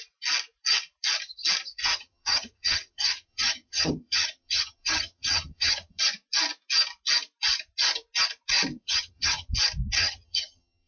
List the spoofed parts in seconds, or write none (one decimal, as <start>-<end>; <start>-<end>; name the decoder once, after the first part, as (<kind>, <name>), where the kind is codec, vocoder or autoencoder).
1.8-6.0 (vocoder, HiFi-GAN); 8.7-9.5; 10.0-10.9